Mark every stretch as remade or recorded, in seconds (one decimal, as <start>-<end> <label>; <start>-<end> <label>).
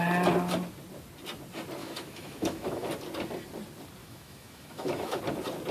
0.0-1.8 recorded; 1.8-2.9 remade; 2.9-4.0 recorded; 4.0-5.2 remade; 5.2-5.7 recorded